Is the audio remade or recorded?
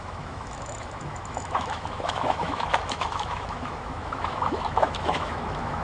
remade